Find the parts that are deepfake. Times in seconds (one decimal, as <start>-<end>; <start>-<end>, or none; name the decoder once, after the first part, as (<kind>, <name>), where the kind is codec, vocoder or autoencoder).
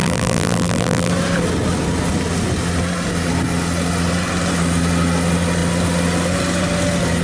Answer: 0.0-1.1 (vocoder, BigVGAN v2)